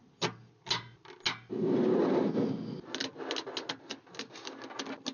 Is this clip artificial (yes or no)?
no